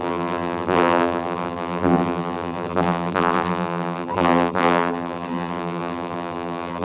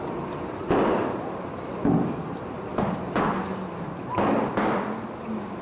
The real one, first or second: second